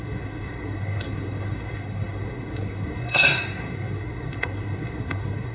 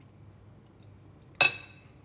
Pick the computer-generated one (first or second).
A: first